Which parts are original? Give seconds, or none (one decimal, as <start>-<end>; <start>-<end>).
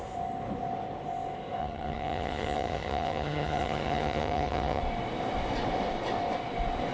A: 0.0-1.6; 4.8-6.9